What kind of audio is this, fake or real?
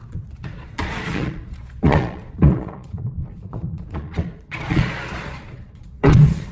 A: fake